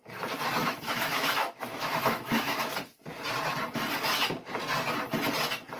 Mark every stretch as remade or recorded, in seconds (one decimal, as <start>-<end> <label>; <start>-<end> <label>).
0.0-0.6 recorded; 0.6-2.7 remade; 2.7-5.8 recorded